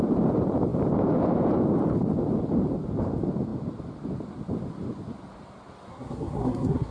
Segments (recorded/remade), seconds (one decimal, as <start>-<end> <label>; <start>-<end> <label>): 0.0-5.9 recorded; 5.9-6.9 remade